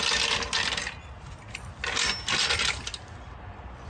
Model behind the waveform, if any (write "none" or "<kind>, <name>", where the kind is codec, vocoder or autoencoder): none